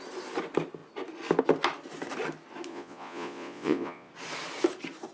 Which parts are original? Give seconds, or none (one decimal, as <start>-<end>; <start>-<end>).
0.0-2.7; 4.1-5.1